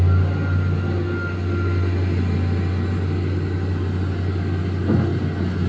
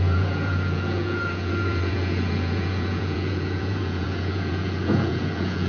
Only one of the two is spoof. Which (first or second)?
second